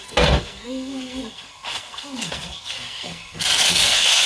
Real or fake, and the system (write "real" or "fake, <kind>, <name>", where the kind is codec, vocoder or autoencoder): fake, codec, SNAC